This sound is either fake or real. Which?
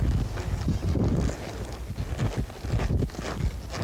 real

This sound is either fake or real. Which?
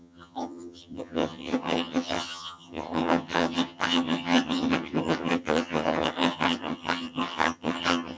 fake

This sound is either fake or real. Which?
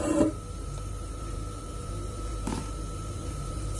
fake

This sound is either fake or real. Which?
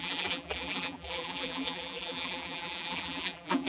fake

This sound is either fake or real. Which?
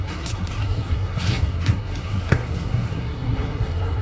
fake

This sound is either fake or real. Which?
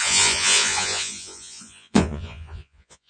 fake